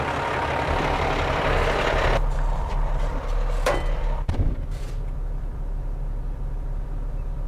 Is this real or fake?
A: fake